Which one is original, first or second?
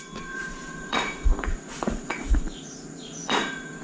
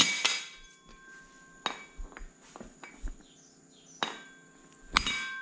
second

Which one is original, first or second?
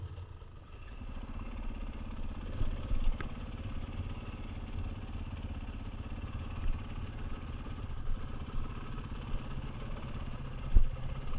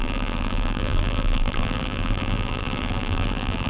first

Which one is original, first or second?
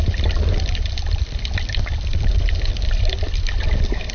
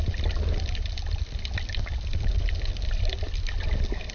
second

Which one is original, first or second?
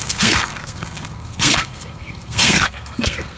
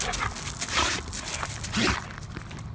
second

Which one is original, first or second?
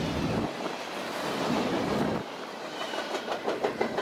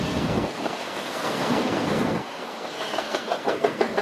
first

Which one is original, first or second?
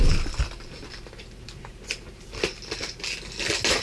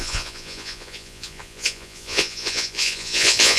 first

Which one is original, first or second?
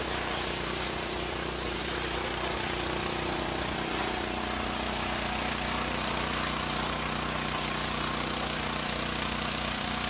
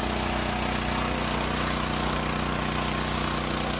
second